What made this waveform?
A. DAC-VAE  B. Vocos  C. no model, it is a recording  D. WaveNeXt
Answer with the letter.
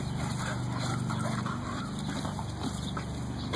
C